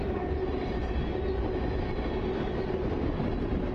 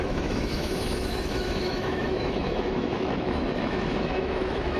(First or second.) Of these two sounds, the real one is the first